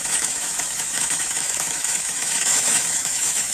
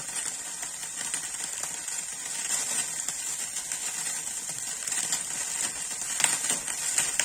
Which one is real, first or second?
second